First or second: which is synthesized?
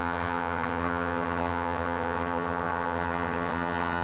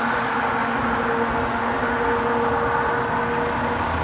first